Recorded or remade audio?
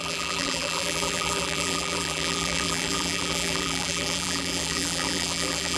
remade